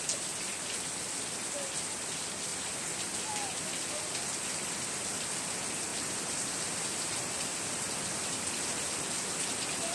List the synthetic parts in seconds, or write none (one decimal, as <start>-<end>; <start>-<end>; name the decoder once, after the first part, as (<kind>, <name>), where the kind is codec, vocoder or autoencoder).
2.5-3.3 (vocoder, BigVGAN v2); 5.9-7.8; 8.7-9.4